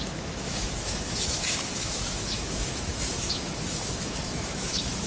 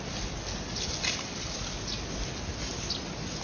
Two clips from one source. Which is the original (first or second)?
second